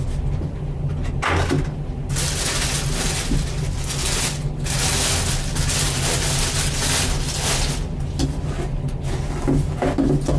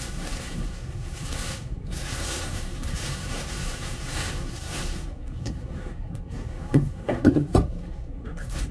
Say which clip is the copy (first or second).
second